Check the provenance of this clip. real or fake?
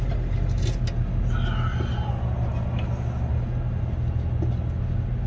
real